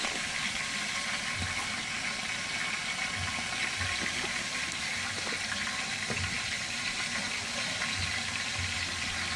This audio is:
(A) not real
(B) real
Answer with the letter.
B